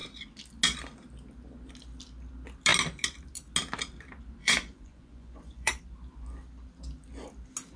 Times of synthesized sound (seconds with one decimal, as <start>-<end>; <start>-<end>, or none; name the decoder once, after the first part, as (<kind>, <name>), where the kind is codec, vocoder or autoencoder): 4.4-5.8 (vocoder, Vocos)